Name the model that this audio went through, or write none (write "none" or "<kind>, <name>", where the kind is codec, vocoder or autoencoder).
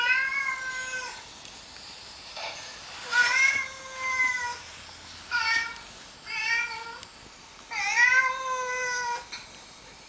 none